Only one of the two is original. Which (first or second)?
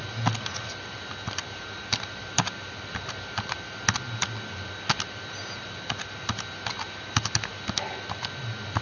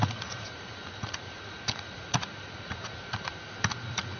first